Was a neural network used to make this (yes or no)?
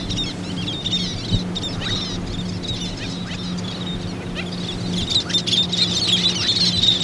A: no